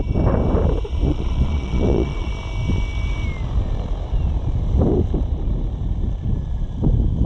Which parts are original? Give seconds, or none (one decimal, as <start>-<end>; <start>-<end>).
0.0-1.1; 2.3-7.3